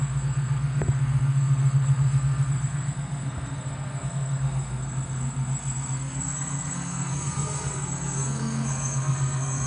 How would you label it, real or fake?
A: fake